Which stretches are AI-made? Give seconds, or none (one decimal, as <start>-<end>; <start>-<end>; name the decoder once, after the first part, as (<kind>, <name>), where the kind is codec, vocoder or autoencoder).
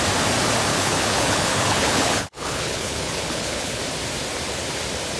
0.7-3.8 (codec, HILCodec)